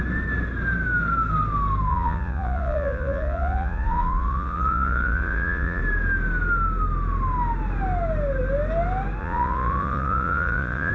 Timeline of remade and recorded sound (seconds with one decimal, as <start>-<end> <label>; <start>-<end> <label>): 0.0-1.9 recorded; 1.9-5.8 remade; 5.8-9.2 recorded; 9.2-10.9 remade